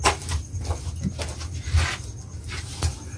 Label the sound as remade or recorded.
recorded